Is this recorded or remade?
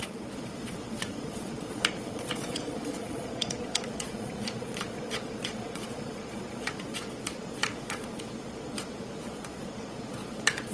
remade